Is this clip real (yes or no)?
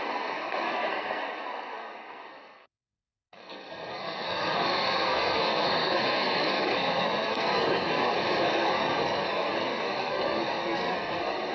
no